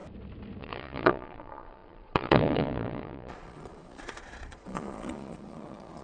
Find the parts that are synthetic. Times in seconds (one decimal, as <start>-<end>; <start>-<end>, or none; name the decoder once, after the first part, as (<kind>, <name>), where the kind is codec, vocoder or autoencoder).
0.6-6.0 (vocoder, Vocos)